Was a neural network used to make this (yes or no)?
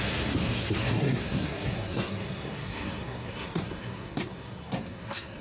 yes